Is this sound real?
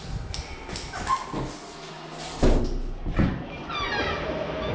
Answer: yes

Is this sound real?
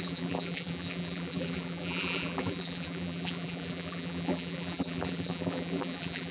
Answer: no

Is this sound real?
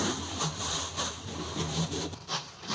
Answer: no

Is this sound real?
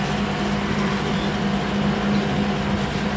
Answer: no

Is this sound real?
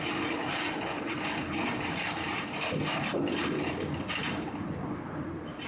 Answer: yes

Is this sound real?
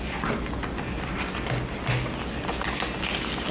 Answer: yes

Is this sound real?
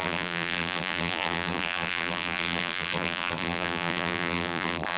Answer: no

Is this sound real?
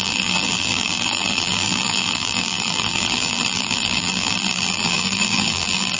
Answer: no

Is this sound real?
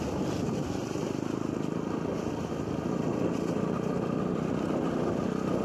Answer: yes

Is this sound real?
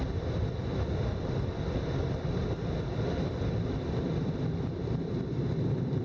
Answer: no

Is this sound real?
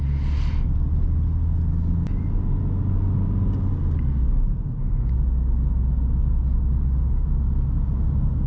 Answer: yes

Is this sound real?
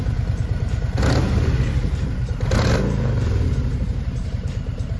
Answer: no